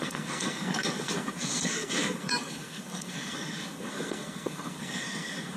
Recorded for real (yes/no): no